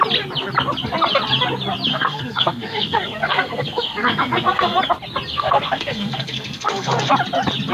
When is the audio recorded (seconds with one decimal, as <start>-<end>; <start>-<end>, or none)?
0.0-1.9; 4.8-5.3; 7.1-7.7